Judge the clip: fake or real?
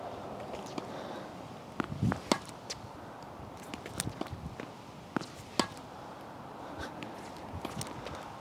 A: real